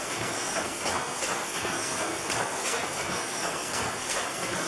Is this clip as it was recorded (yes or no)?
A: no